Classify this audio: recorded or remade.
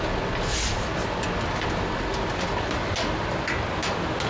recorded